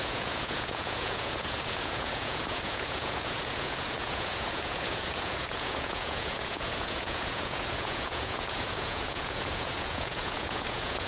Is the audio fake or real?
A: fake